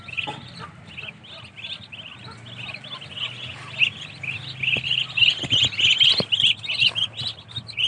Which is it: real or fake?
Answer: real